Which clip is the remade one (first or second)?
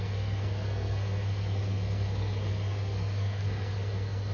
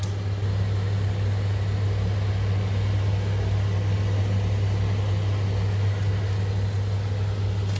first